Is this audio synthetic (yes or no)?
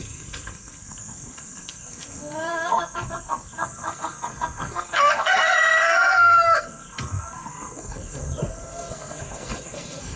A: yes